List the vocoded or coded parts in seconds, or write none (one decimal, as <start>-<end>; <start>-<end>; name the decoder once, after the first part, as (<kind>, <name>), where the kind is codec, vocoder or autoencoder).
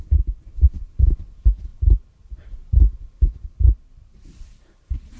none